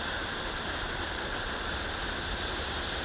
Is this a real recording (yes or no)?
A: yes